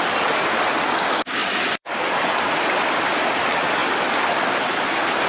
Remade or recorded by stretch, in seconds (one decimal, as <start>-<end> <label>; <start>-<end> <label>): 0.0-1.4 recorded; 1.4-3.0 remade; 3.0-5.3 recorded